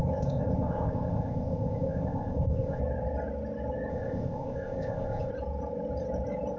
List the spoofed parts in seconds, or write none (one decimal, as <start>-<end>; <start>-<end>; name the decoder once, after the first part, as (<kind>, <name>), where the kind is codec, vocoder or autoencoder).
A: 0.0-2.8 (codec, ZipCodec); 3.9-5.3